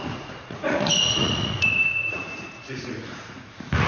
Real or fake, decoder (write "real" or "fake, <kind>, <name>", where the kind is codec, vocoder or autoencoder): fake, vocoder, Vocos